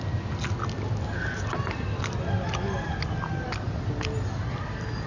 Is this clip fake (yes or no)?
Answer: no